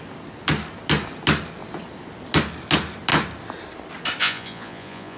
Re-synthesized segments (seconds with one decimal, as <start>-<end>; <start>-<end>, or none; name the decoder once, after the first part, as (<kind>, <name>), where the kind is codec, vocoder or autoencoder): 4.2-5.2 (vocoder, Vocos)